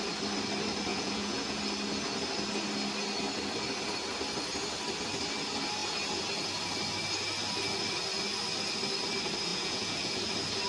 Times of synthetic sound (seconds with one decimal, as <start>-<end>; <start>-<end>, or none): 0.9-1.6; 9.5-10.2